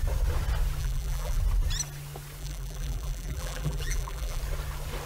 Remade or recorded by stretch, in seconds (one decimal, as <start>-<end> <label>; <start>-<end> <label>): 0.0-0.8 recorded; 0.8-1.4 remade; 1.4-2.4 recorded; 2.4-4.4 remade; 4.4-5.1 recorded